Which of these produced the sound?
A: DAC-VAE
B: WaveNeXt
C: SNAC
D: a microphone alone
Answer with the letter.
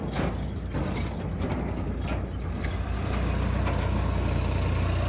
D